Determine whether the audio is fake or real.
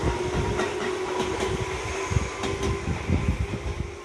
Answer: real